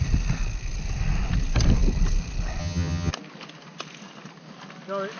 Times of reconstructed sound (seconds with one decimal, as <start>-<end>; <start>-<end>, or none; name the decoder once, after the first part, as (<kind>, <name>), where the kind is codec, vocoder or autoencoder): 2.6-3.1 (vocoder, HiFi-GAN)